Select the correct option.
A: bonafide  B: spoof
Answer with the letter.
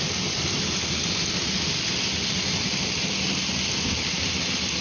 A